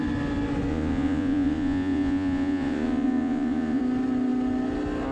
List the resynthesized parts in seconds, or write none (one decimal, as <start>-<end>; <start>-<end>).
0.7-3.8